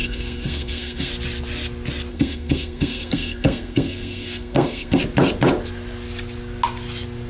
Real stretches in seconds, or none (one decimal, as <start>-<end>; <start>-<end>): 1.1-2.1; 5.0-7.3